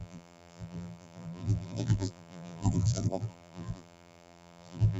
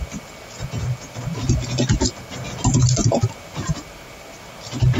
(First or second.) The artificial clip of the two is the first